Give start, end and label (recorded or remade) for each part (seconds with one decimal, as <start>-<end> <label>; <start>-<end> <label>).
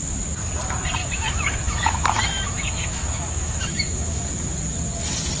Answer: 0.0-1.0 recorded; 1.0-4.2 remade; 4.2-5.4 recorded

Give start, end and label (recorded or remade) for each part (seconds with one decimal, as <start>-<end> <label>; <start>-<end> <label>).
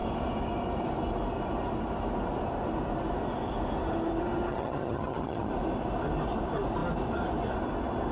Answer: 0.0-4.5 recorded; 4.5-5.5 remade; 5.5-8.1 recorded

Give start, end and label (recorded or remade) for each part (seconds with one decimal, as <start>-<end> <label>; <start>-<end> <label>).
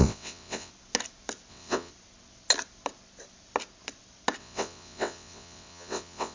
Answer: 0.0-0.7 remade; 0.7-1.5 recorded; 1.5-1.9 remade; 1.9-4.4 recorded; 4.4-6.3 remade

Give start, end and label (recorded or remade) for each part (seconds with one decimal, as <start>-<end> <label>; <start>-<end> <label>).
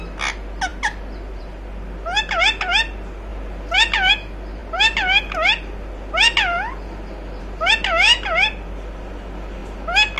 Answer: 0.0-10.2 recorded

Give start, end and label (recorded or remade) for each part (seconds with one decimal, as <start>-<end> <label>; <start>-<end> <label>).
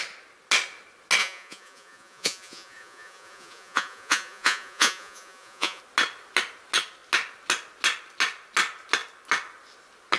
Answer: 0.0-1.2 recorded; 1.2-5.8 remade; 5.8-10.2 recorded